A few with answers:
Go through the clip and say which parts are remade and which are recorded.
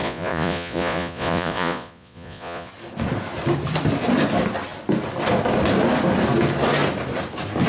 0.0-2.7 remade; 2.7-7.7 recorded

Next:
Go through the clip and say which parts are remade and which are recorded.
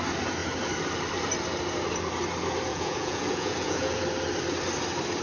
0.0-2.7 recorded; 2.7-4.0 remade; 4.0-5.2 recorded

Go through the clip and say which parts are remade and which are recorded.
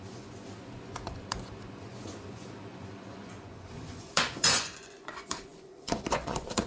0.0-6.7 remade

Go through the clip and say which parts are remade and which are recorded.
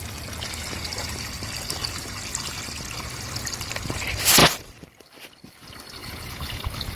0.0-6.0 recorded; 6.0-6.6 remade; 6.6-7.0 recorded